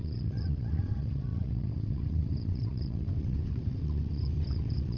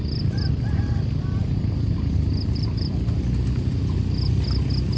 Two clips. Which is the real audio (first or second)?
second